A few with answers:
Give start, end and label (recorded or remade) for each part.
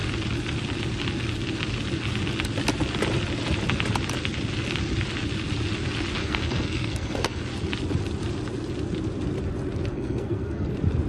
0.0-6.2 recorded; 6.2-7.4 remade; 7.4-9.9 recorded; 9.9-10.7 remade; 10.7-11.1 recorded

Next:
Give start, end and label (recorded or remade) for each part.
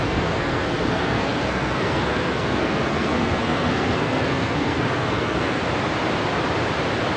0.0-5.6 remade; 5.6-7.2 recorded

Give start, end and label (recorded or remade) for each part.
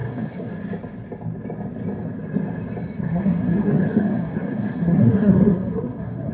0.0-0.5 remade; 0.5-3.0 recorded; 3.0-6.3 remade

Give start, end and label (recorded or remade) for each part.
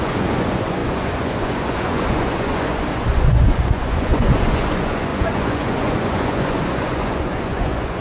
0.0-8.0 remade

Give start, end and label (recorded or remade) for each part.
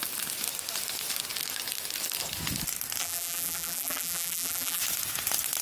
0.0-3.0 recorded; 3.0-4.8 remade; 4.8-5.6 recorded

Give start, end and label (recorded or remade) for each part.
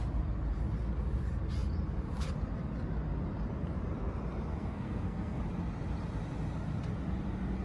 0.0-4.5 recorded; 4.5-5.4 remade; 5.4-7.6 recorded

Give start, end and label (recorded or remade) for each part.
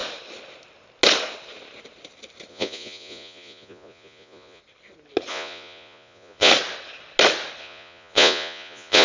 0.0-2.5 recorded; 2.5-4.6 remade; 4.6-5.3 recorded; 5.3-6.5 remade; 6.5-7.6 recorded; 7.6-9.0 remade